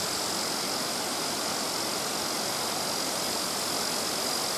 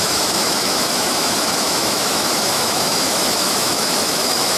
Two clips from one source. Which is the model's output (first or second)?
second